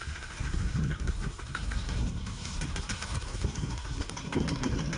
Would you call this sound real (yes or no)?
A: no